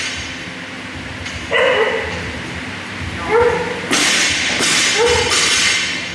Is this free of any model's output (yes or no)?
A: yes